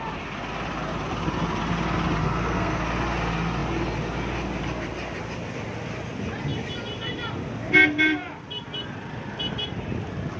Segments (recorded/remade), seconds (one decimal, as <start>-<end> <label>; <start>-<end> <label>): 0.0-2.2 recorded; 2.2-2.8 remade; 2.8-10.4 recorded

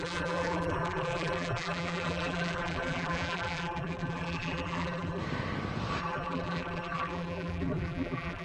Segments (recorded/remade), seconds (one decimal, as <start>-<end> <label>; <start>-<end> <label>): 0.0-5.2 remade; 5.2-6.0 recorded; 6.0-8.4 remade

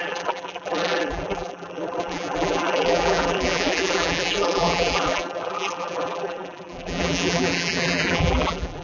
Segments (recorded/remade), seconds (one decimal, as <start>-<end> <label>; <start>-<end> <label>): 0.0-8.8 remade

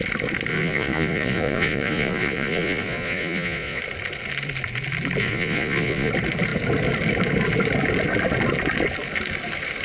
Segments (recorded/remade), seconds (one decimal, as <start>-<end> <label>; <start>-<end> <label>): 0.0-0.5 recorded; 0.5-3.8 remade; 3.8-5.2 recorded; 5.2-6.1 remade; 6.1-9.8 recorded

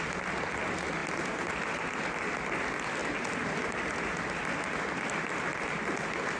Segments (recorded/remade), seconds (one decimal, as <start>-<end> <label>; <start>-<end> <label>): 0.0-3.0 recorded; 3.0-4.0 remade; 4.0-6.4 recorded

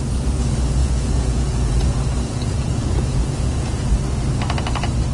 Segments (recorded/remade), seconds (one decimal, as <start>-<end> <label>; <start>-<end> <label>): 0.0-0.8 recorded; 0.8-3.9 remade; 3.9-5.1 recorded

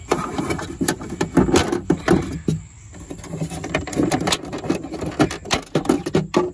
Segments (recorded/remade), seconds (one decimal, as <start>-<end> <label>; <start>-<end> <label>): 0.0-6.5 recorded